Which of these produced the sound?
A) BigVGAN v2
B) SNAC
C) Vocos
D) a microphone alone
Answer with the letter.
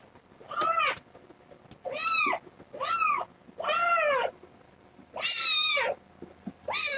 D